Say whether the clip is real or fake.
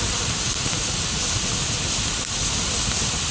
real